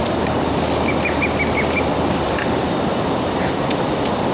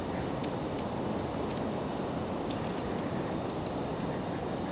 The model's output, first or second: first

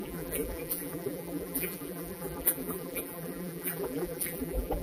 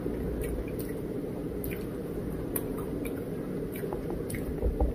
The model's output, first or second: first